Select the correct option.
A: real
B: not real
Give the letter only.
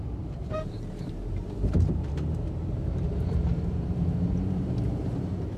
B